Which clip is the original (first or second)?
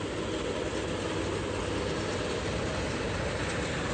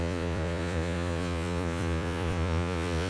first